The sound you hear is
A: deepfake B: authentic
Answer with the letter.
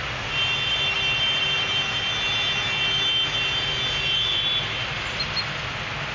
B